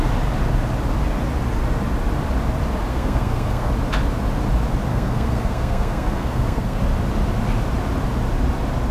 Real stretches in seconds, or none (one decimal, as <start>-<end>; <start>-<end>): 0.0-2.9; 3.7-4.9; 6.8-8.9